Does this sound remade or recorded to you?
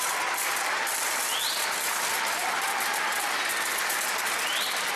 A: recorded